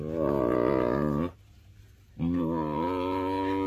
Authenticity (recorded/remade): recorded